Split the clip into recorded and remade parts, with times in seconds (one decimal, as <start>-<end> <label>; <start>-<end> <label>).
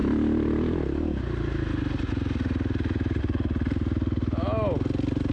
0.0-5.3 recorded